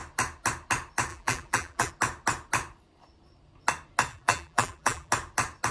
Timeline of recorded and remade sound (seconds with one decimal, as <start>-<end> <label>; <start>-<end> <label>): 0.0-1.1 recorded; 1.1-1.9 remade; 1.9-4.1 recorded; 4.1-5.1 remade; 5.1-5.7 recorded